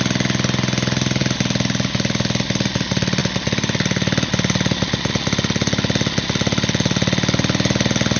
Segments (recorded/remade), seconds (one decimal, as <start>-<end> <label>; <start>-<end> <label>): 0.0-8.2 recorded